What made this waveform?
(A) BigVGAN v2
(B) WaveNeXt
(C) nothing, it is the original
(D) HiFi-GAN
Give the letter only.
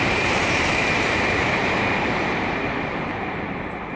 A